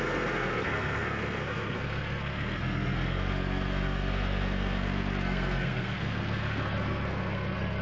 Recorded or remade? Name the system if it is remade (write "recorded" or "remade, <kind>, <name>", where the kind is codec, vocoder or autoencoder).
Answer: remade, codec, SNAC